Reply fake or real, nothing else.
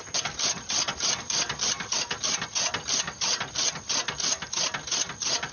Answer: real